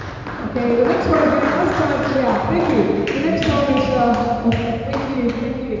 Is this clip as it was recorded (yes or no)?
yes